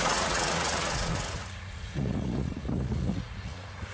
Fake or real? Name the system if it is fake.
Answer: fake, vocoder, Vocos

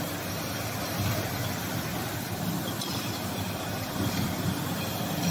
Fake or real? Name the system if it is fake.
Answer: real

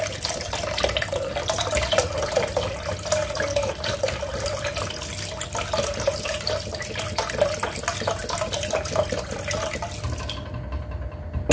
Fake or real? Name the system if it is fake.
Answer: real